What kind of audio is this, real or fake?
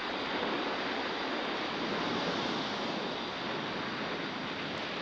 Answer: real